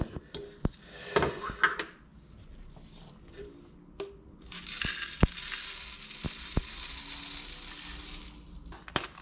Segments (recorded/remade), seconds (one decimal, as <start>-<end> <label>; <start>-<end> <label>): 0.0-9.2 recorded